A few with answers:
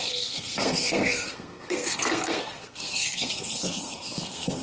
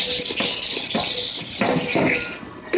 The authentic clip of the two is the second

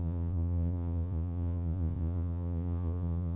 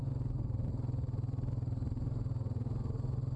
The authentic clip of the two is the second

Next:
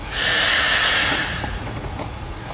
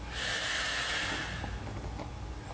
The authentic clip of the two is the second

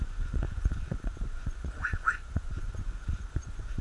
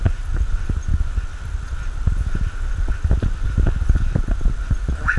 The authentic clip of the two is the second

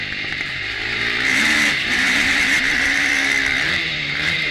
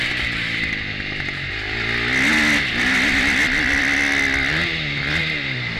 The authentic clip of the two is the second